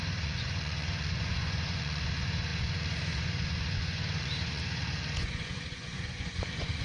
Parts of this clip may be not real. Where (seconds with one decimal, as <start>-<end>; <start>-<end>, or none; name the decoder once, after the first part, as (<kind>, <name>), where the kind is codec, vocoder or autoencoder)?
0.0-6.8 (vocoder, Vocos)